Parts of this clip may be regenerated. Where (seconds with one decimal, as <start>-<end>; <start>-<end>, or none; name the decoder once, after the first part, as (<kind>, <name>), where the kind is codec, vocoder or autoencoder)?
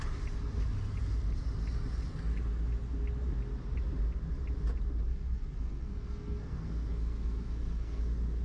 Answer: 5.1-8.0 (codec, SNAC)